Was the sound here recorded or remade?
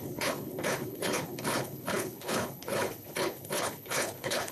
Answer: remade